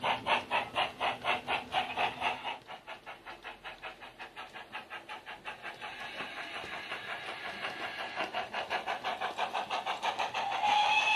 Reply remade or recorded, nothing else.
recorded